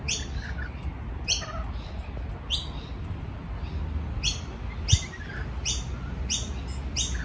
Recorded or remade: recorded